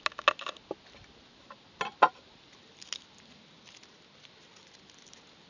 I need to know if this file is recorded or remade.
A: recorded